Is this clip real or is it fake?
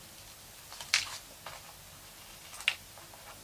real